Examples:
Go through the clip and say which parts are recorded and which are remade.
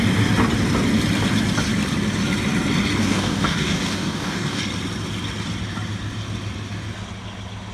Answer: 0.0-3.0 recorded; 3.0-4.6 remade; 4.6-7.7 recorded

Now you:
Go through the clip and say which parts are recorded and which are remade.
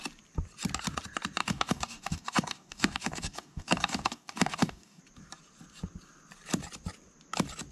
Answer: 0.0-1.4 recorded; 1.4-5.0 remade; 5.0-7.7 recorded